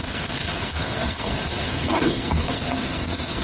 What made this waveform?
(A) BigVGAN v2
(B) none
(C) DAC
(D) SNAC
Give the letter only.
D